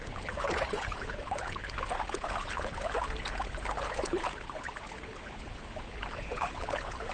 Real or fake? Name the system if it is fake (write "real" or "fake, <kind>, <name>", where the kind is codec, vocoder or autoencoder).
fake, codec, HILCodec